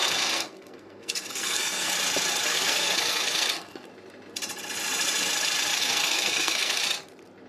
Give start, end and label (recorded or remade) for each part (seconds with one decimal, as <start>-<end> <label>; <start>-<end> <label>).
0.0-1.9 remade; 1.9-2.5 recorded; 2.5-3.9 remade; 3.9-5.8 recorded; 5.8-6.8 remade; 6.8-7.5 recorded